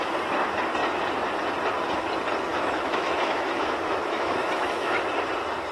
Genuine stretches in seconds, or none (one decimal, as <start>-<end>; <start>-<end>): 0.0-2.5; 5.0-5.7